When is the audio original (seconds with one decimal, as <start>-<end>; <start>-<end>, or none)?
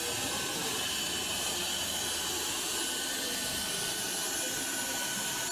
0.0-5.5